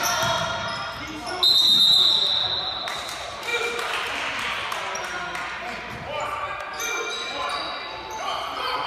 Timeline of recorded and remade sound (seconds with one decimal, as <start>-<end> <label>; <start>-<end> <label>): 0.0-3.5 recorded; 3.5-4.0 remade; 4.0-8.9 recorded